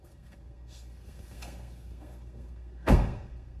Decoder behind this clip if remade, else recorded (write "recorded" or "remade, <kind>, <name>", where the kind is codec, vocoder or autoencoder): remade, codec, SNAC